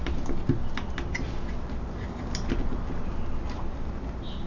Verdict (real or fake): real